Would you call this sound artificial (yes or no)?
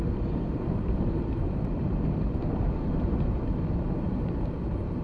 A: yes